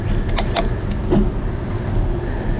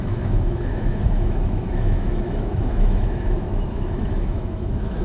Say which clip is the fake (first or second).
second